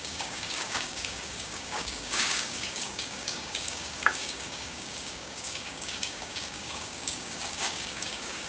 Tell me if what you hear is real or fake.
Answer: fake